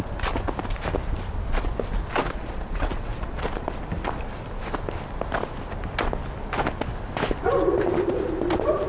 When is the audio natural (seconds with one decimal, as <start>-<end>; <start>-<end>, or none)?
0.0-2.2; 3.4-8.9